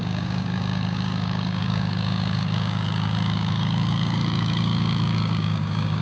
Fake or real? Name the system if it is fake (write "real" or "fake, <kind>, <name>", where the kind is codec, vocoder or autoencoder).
fake, codec, DAC